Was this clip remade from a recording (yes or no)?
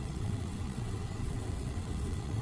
yes